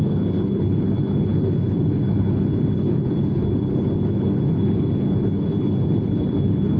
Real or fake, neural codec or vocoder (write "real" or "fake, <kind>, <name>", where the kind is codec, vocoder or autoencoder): fake, codec, HILCodec